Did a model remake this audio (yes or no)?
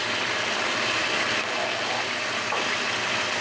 no